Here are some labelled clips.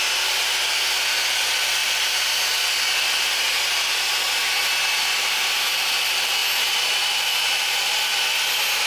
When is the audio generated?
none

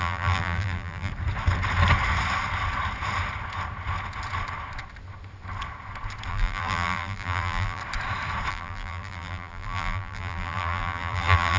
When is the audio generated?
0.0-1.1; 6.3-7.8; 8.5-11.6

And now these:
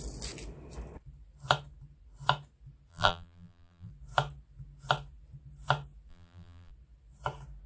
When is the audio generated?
2.9-3.9; 6.1-6.7

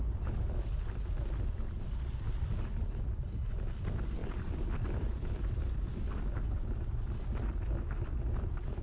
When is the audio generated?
none

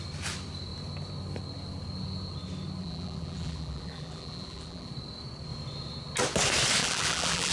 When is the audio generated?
2.8-4.9; 6.8-7.5

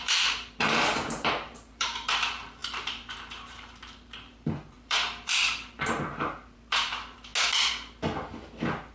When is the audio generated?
0.0-7.3

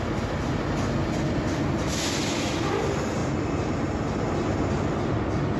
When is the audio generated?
3.2-3.7